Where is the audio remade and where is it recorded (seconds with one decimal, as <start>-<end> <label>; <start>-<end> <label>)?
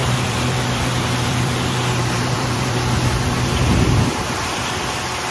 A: 0.0-3.2 remade; 3.2-5.3 recorded